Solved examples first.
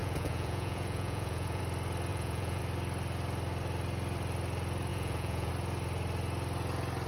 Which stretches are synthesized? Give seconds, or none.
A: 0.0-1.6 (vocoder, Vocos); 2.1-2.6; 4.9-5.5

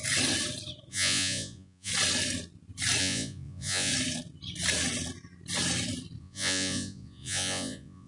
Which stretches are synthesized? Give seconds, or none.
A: 0.9-1.9 (vocoder, Vocos); 3.0-3.9; 6.2-8.1

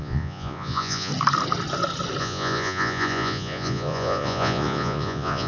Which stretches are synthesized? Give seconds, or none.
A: 0.0-1.1 (vocoder, Vocos); 2.2-5.5

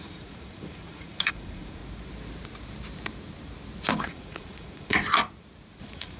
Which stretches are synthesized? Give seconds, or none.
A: 0.0-1.8 (vocoder, Vocos); 3.9-5.2; 5.8-6.2

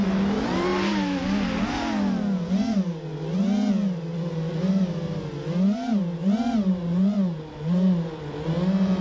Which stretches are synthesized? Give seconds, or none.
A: none

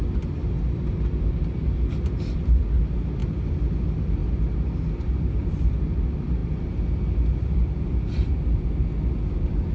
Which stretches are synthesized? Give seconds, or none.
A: none